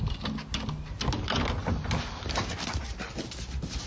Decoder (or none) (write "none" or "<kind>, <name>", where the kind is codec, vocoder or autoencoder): none